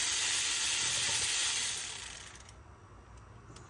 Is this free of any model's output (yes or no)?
yes